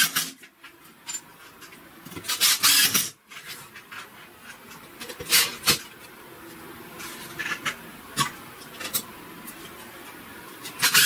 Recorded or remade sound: recorded